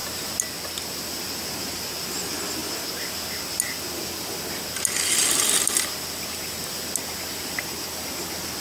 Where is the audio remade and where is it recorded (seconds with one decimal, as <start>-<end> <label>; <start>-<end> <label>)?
0.0-8.6 recorded